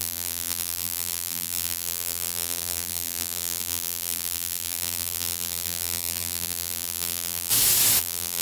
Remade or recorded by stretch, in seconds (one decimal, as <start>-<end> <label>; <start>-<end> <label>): 0.0-7.5 remade; 7.5-8.0 recorded; 8.0-8.4 remade